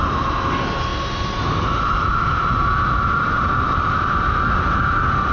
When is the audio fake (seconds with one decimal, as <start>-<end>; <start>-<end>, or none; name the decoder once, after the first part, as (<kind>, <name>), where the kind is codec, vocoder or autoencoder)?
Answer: none